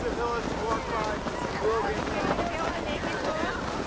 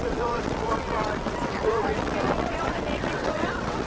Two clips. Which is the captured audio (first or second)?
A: first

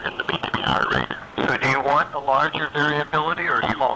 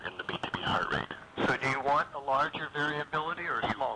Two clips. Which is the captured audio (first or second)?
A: second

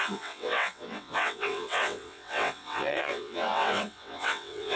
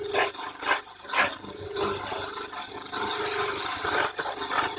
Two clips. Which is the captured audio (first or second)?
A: second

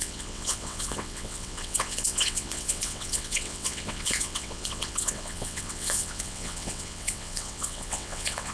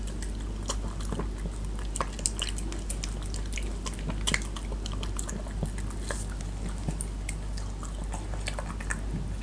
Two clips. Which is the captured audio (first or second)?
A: second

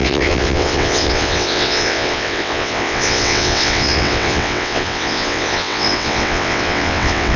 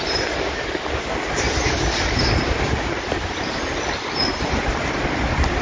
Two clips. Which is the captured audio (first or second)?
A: second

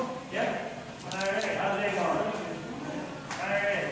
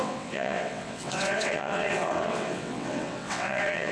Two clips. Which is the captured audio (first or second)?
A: first